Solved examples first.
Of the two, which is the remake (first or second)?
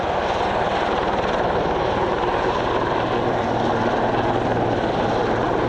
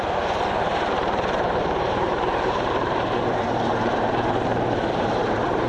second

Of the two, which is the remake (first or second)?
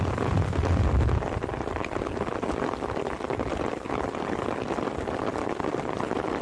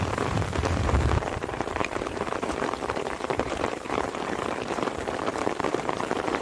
second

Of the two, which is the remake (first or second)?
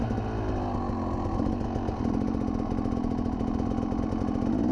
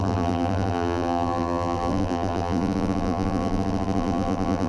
second